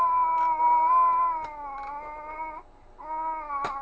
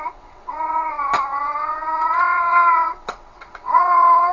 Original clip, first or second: first